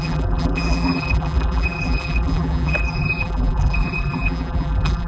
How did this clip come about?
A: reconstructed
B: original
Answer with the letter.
A